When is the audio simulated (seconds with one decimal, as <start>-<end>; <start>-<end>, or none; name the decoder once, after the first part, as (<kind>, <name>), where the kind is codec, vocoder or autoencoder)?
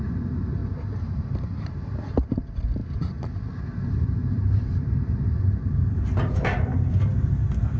0.6-1.7 (vocoder, BigVGAN v2); 4.3-7.3